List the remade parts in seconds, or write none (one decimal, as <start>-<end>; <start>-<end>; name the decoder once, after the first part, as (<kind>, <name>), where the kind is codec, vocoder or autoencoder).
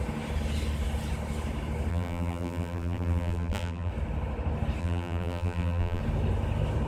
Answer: 1.9-3.9 (vocoder, BigVGAN v2); 4.8-6.0